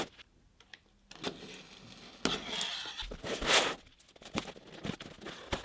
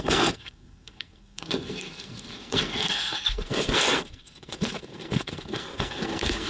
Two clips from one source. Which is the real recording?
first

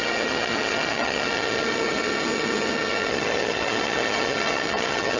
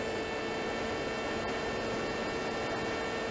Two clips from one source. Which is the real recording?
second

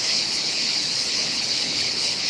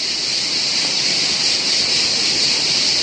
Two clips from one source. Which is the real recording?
second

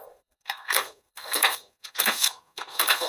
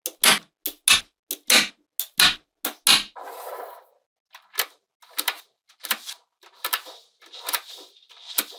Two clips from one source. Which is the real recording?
second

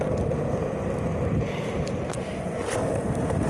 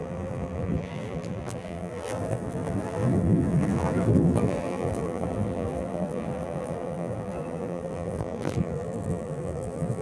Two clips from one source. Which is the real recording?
first